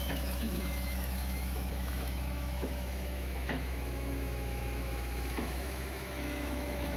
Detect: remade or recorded remade